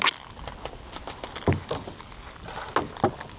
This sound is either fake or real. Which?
real